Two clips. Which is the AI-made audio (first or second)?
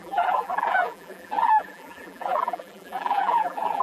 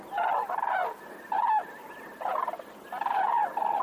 first